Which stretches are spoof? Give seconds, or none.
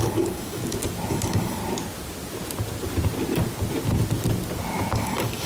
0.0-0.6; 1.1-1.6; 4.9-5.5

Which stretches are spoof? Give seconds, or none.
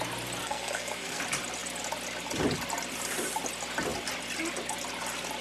0.4-1.2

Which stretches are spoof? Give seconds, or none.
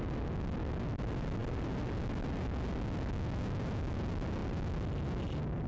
none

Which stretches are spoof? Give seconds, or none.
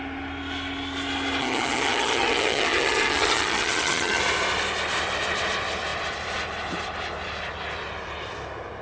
1.4-4.2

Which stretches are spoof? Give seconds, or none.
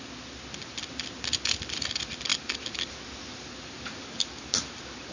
none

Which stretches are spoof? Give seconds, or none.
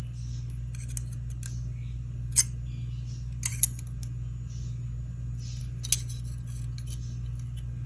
none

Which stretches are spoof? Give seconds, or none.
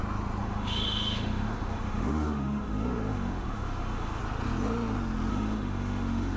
0.4-4.2; 5.3-6.4